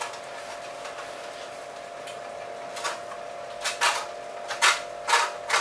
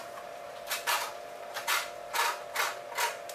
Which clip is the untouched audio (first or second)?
first